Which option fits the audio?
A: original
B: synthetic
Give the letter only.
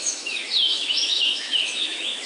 B